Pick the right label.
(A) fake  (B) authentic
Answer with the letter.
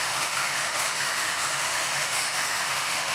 A